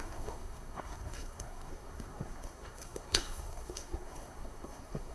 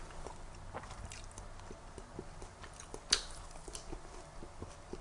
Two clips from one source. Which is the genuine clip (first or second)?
second